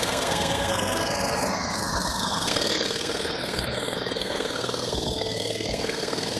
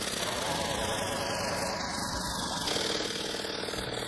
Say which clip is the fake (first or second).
first